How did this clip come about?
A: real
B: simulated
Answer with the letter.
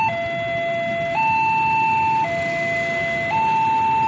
A